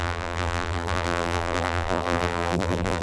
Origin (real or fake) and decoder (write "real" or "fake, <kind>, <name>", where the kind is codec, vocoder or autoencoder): fake, vocoder, BigVGAN v2